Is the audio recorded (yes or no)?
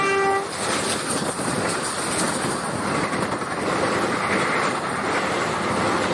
yes